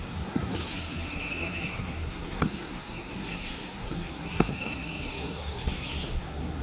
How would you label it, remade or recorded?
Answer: remade